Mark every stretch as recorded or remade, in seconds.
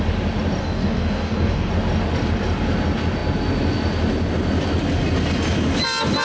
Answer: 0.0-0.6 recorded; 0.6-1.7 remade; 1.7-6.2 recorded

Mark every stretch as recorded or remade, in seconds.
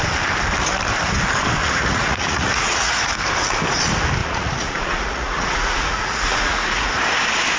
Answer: 0.0-1.6 recorded; 1.6-3.1 remade; 3.1-4.2 recorded; 4.2-6.9 remade; 6.9-7.6 recorded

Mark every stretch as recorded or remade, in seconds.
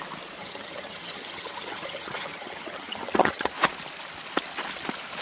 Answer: 0.0-0.4 recorded; 0.4-3.5 remade; 3.5-5.2 recorded